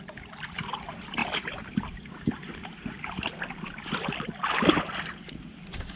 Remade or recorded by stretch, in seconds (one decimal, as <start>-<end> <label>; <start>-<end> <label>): 0.0-6.0 recorded